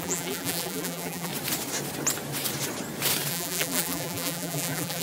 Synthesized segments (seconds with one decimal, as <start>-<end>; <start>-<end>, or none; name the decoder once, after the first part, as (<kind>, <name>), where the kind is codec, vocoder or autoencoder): 0.0-1.3 (vocoder, BigVGAN v2); 3.3-5.0

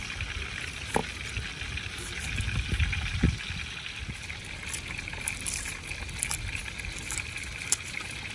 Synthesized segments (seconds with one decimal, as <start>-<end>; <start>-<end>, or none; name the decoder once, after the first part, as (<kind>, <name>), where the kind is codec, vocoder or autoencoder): none

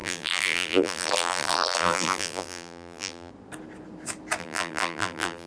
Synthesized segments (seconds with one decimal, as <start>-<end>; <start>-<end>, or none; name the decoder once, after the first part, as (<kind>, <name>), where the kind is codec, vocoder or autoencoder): 0.0-3.3 (vocoder, BigVGAN v2); 4.4-5.5

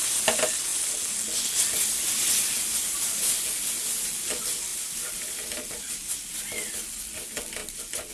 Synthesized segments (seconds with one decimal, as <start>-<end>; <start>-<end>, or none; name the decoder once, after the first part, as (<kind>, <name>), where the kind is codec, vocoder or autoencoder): 4.7-5.8 (vocoder, BigVGAN v2)

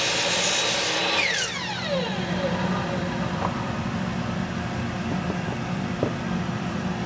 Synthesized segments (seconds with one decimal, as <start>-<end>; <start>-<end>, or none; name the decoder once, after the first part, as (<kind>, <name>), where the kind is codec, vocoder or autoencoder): 0.0-7.1 (vocoder, BigVGAN v2)